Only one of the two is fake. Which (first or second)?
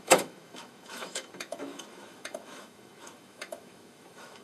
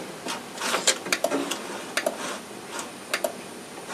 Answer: first